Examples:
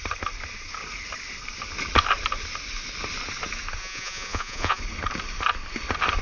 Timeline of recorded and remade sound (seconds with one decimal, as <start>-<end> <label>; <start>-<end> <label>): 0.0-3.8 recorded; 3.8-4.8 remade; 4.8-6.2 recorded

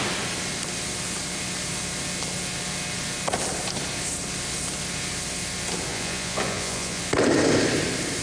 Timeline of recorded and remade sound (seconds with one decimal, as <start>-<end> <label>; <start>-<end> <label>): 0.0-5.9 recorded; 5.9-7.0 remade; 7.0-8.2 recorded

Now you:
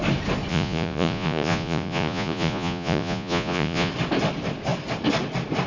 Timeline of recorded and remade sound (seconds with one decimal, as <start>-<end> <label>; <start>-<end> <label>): 0.0-0.5 recorded; 0.5-3.9 remade; 3.9-5.7 recorded